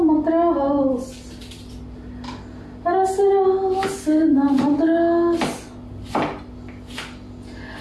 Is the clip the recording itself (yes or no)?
yes